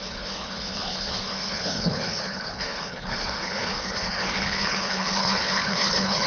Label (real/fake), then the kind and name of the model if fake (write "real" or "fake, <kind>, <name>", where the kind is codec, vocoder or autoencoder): fake, codec, HILCodec